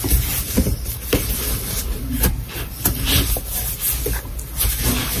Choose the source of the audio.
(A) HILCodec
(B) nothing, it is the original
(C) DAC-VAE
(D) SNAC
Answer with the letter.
B